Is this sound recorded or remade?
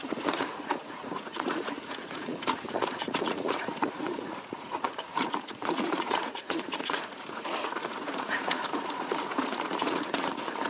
remade